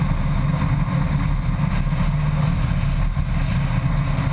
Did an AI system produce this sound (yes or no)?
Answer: no